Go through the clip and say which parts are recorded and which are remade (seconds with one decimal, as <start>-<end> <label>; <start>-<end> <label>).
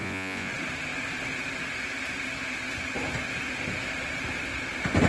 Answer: 0.0-0.5 remade; 0.5-5.1 recorded